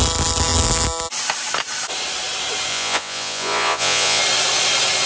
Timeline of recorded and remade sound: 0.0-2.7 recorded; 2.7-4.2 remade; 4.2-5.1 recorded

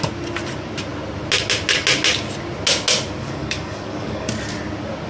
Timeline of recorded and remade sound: 0.0-3.2 recorded; 3.2-4.3 remade; 4.3-5.1 recorded

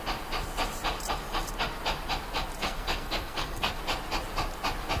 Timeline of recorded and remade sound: 0.0-2.6 recorded; 2.6-3.8 remade; 3.8-5.0 recorded

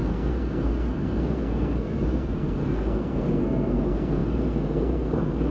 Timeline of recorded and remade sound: 0.0-5.5 remade

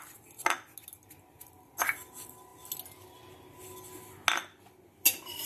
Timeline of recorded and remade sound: 0.0-5.5 recorded

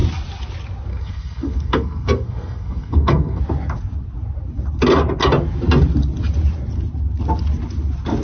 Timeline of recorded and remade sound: 0.0-0.9 recorded; 0.9-3.4 remade; 3.4-8.2 recorded